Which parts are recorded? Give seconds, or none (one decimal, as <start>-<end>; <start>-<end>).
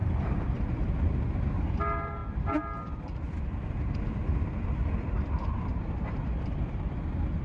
0.0-7.4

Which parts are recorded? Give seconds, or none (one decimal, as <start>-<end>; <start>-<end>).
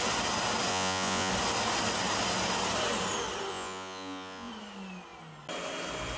0.0-0.7; 1.3-3.5; 4.5-6.2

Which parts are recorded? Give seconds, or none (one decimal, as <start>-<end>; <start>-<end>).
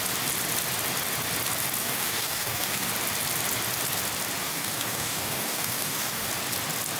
0.0-1.8; 2.9-4.4; 6.3-7.0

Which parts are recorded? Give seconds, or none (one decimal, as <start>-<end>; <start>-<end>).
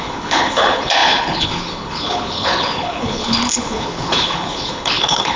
none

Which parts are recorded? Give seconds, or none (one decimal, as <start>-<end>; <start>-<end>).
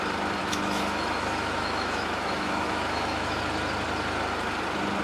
0.0-0.4; 3.4-5.0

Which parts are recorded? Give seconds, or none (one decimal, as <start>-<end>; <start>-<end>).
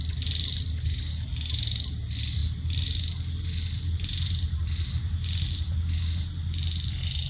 0.0-7.3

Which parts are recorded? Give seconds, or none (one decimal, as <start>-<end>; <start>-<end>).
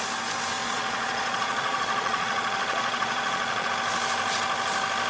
0.0-0.6; 3.7-5.1